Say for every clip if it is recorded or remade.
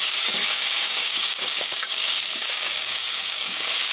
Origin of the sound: remade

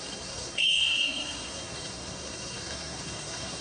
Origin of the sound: remade